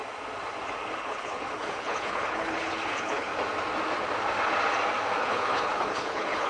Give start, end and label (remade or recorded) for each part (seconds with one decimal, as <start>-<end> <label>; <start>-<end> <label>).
0.0-1.0 recorded; 1.0-3.3 remade; 3.3-5.2 recorded; 5.2-6.5 remade